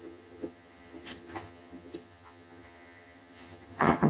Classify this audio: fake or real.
fake